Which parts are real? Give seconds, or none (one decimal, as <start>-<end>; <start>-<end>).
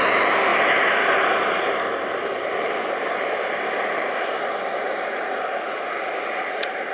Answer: 0.0-0.5; 4.1-6.9